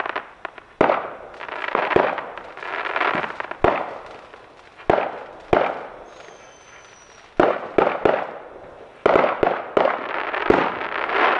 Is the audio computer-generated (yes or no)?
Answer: no